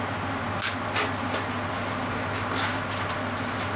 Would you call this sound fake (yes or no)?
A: no